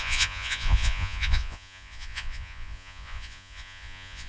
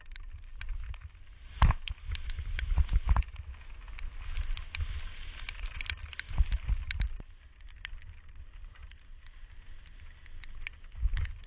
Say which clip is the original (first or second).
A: second